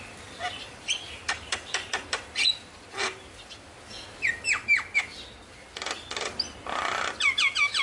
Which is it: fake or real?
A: fake